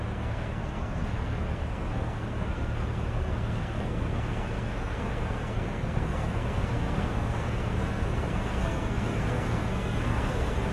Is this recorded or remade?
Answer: remade